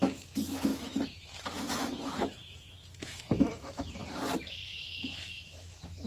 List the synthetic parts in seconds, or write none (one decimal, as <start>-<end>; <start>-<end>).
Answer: 0.0-4.0; 4.5-6.1